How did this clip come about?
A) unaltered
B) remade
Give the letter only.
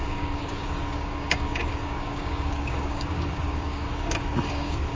B